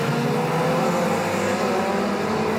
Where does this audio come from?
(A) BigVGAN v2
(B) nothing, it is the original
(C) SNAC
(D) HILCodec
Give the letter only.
B